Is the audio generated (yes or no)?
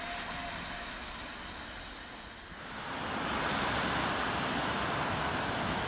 no